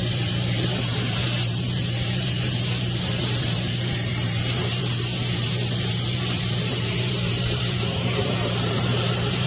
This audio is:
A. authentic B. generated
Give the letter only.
B